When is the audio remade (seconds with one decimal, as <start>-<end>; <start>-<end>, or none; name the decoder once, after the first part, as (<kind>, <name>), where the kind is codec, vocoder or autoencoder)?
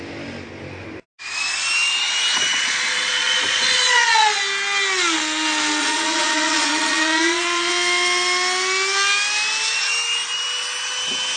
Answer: 2.3-4.4 (vocoder, Vocos); 5.8-7.7